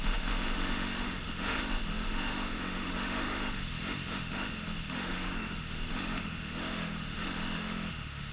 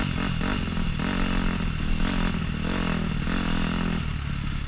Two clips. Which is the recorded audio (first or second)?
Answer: second